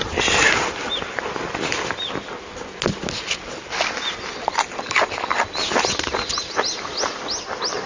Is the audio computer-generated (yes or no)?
no